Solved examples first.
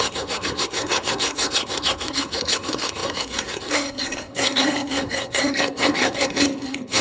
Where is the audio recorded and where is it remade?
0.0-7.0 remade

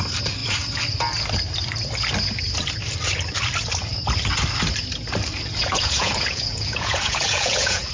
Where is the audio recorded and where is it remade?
0.0-5.6 recorded; 5.6-7.9 remade